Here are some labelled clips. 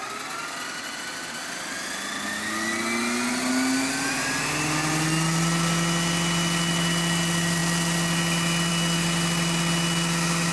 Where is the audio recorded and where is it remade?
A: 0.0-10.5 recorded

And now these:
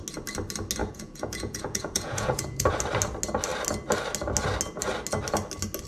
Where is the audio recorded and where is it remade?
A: 0.0-0.8 recorded; 0.8-2.7 remade; 2.7-5.9 recorded

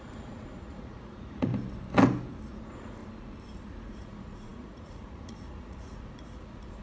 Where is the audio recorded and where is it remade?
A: 0.0-1.5 remade; 1.5-2.5 recorded; 2.5-3.0 remade; 3.0-3.7 recorded; 3.7-6.8 remade

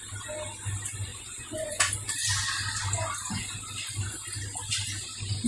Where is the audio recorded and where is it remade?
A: 0.0-1.1 recorded; 1.1-1.9 remade; 1.9-5.5 recorded

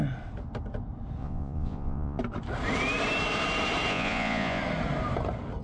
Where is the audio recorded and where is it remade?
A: 0.0-1.2 recorded; 1.2-2.2 remade; 2.2-3.9 recorded; 3.9-4.6 remade; 4.6-5.6 recorded

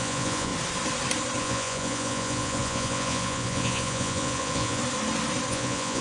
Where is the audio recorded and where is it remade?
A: 0.0-0.5 remade; 0.5-1.4 recorded; 1.4-4.8 remade; 4.8-5.5 recorded; 5.5-6.0 remade

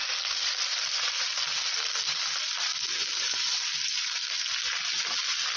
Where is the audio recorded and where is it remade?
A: 0.0-5.6 recorded